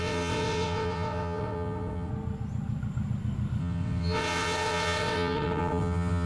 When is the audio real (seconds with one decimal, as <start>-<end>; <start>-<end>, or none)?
2.1-3.6